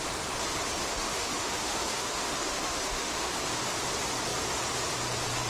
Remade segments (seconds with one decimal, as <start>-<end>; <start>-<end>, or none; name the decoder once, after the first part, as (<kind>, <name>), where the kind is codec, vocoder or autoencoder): 0.9-3.3 (autoencoder, DAC-VAE)